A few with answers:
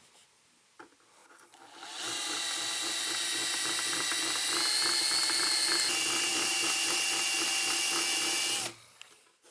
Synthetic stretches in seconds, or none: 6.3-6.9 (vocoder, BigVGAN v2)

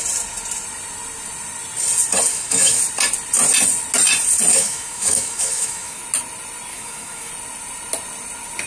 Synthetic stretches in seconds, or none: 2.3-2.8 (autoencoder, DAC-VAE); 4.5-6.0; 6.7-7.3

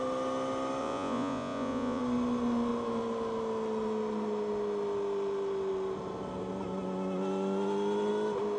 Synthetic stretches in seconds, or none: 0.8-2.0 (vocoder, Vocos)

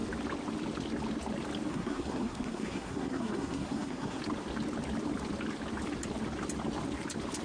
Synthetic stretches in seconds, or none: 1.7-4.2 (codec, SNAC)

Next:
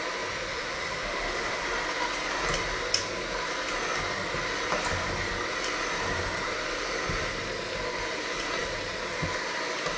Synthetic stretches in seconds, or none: 0.5-1.6 (autoencoder, DAC-VAE)

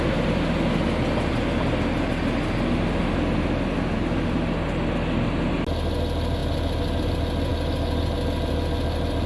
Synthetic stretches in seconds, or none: none

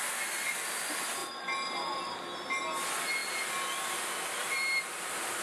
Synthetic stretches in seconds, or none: 4.4-5.4 (vocoder, BigVGAN v2)

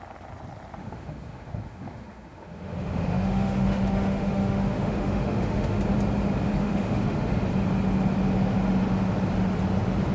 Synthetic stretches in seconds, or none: 0.8-5.8 (autoencoder, DAC-VAE); 6.6-7.3